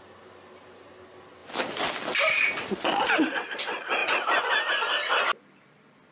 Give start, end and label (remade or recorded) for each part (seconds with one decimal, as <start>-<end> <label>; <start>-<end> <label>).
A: 0.0-4.0 recorded; 4.0-5.3 remade; 5.3-6.1 recorded